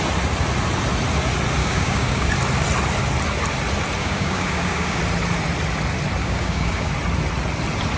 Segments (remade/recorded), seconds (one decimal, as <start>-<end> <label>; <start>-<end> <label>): 0.0-1.6 recorded; 1.6-2.3 remade; 2.3-4.0 recorded; 4.0-5.0 remade; 5.0-6.2 recorded; 6.2-6.9 remade; 6.9-8.0 recorded